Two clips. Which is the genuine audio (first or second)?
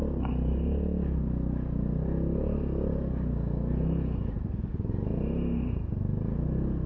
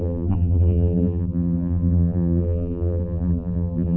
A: first